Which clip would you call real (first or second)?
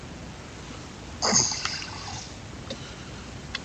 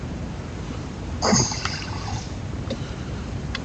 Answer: first